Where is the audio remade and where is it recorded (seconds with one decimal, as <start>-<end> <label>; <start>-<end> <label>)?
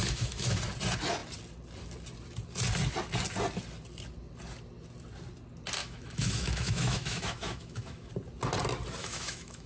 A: 0.0-0.6 remade; 0.6-5.8 recorded; 5.8-8.1 remade; 8.1-9.0 recorded; 9.0-9.7 remade